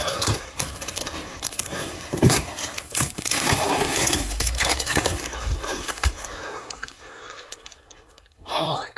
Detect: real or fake fake